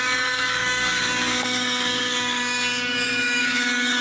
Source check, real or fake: fake